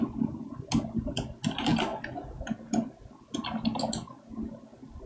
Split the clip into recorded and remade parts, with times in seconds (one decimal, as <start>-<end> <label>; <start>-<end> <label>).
0.0-5.1 recorded